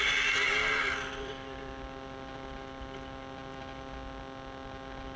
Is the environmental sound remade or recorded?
recorded